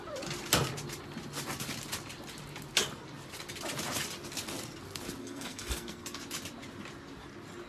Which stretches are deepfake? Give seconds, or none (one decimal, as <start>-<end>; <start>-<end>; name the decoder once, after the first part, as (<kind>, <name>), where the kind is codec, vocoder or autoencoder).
5.2-6.2 (codec, SNAC)